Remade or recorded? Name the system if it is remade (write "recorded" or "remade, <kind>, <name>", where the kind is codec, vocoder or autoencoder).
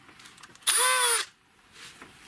recorded